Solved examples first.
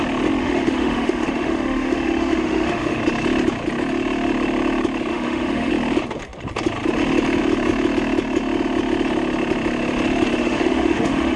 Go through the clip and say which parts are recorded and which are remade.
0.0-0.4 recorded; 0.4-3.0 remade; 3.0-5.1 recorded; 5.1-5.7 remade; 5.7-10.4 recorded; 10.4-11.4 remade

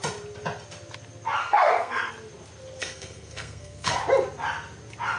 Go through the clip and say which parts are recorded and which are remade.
0.0-1.4 recorded; 1.4-2.1 remade; 2.1-2.8 recorded; 2.8-4.0 remade; 4.0-5.2 recorded